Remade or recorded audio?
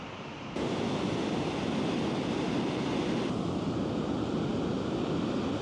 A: recorded